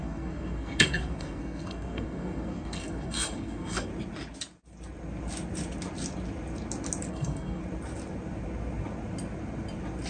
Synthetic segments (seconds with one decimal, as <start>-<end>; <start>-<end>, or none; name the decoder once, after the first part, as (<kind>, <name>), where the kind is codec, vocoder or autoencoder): 0.0-3.9 (codec, SNAC); 7.1-7.6